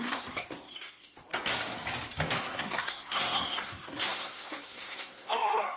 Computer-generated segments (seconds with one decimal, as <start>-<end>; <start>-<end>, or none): 0.0-1.3; 2.4-5.8